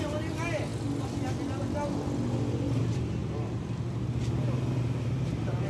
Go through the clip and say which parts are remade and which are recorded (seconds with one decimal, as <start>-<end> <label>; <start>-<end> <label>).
0.0-5.7 recorded